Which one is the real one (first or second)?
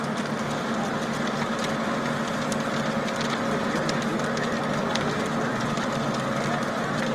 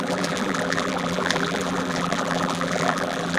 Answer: first